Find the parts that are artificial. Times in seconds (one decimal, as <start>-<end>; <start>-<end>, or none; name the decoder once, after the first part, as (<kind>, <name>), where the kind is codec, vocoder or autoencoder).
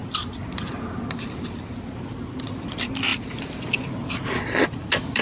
none